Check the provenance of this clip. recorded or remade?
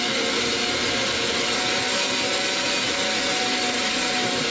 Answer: recorded